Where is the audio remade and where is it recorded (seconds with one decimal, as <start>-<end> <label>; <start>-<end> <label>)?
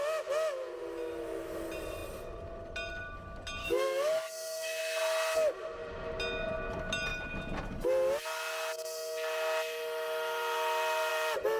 0.0-3.6 recorded; 3.6-4.8 remade; 4.8-11.6 recorded